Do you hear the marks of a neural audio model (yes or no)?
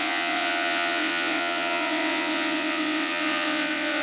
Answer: yes